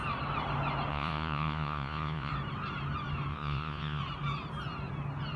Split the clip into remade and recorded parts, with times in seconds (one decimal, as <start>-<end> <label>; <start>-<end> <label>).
0.0-0.9 recorded; 0.9-2.3 remade; 2.3-3.3 recorded; 3.3-4.0 remade; 4.0-5.4 recorded

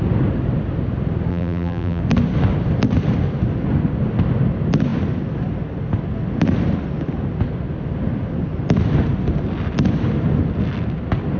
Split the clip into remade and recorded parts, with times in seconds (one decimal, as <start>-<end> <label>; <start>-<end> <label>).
0.0-1.3 recorded; 1.3-2.0 remade; 2.0-11.4 recorded

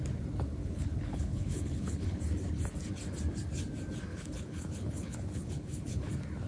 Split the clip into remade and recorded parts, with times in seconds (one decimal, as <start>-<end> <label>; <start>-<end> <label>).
0.0-0.6 recorded; 0.6-2.2 remade; 2.2-4.1 recorded; 4.1-6.1 remade; 6.1-6.5 recorded

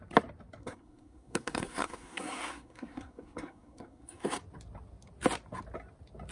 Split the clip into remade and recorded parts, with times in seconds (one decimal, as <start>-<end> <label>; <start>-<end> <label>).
0.0-0.6 recorded; 0.6-4.4 remade; 4.4-6.3 recorded

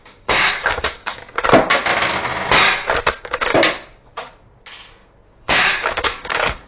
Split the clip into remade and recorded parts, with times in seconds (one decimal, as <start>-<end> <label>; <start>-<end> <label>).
0.0-1.2 remade; 1.2-3.2 recorded; 3.2-3.6 remade; 3.6-5.4 recorded; 5.4-6.7 remade

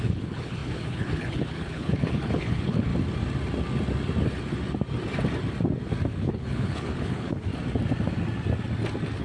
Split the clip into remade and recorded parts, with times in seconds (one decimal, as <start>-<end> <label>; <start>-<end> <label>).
0.0-2.9 remade; 2.9-6.2 recorded; 6.2-7.5 remade; 7.5-9.2 recorded